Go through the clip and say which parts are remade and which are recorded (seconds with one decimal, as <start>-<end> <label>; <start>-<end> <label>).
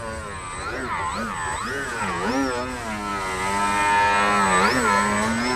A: 0.0-1.6 recorded; 1.6-2.3 remade; 2.3-5.6 recorded